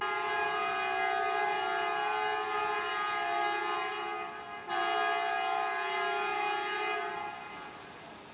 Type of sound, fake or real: real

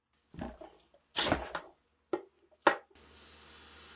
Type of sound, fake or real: real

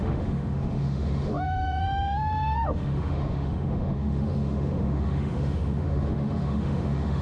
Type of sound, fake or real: fake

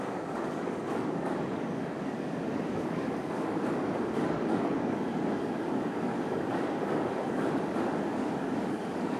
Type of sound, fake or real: fake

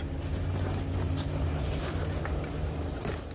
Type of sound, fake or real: real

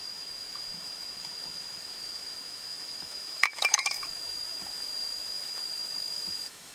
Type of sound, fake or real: fake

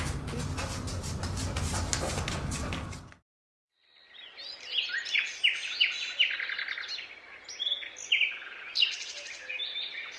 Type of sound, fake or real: real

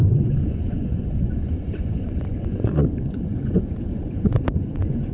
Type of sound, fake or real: fake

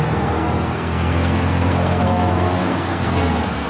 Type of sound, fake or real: fake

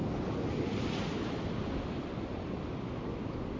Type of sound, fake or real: real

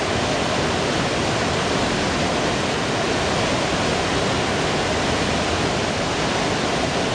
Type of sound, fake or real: real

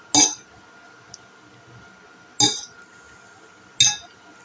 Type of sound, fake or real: real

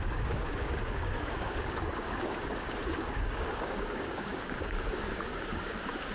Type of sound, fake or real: fake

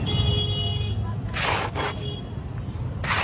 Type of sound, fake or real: real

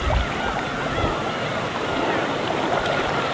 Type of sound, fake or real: real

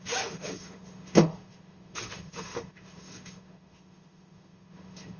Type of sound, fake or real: fake